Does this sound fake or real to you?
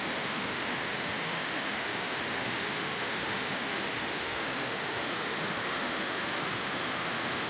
fake